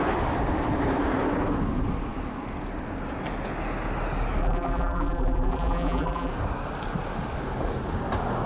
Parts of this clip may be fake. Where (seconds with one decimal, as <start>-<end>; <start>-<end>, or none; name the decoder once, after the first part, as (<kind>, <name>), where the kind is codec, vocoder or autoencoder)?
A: 4.4-6.3 (vocoder, BigVGAN v2)